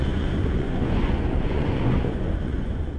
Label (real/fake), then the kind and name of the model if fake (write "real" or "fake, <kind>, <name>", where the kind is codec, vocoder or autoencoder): fake, vocoder, Vocos